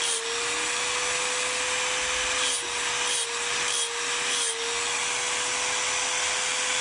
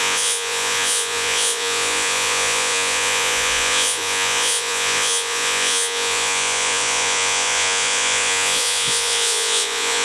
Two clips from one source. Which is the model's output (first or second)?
second